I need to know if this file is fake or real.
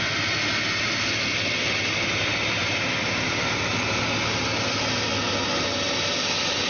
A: real